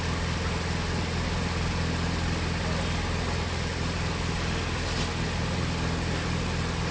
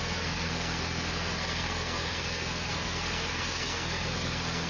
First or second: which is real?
first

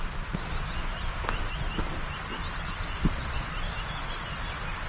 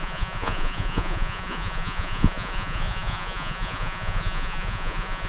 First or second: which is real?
first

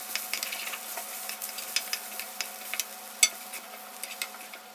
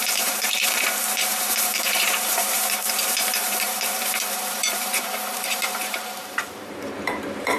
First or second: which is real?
first